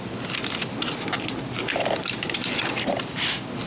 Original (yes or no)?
yes